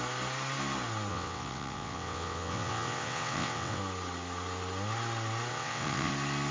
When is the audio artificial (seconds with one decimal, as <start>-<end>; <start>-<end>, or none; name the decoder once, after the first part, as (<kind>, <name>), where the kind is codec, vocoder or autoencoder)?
1.1-3.8 (vocoder, WaveNeXt); 5.5-6.1